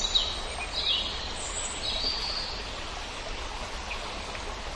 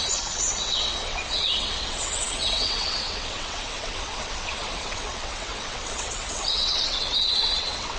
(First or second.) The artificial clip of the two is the second